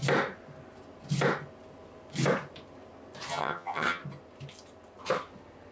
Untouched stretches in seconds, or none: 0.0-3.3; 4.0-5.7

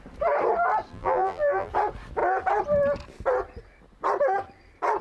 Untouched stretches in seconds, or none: 0.0-0.9; 1.7-5.0

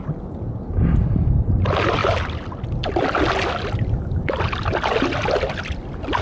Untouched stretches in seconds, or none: 0.0-6.2

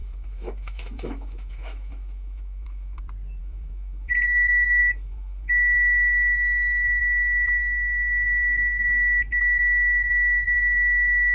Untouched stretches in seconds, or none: 3.0-3.4; 4.1-4.8; 9.2-11.3

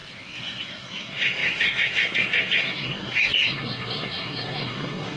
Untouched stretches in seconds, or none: none

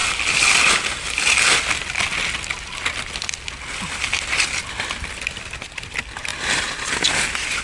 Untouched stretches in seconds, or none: 0.0-7.6

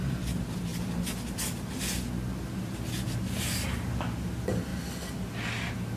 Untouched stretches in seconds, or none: 0.0-6.0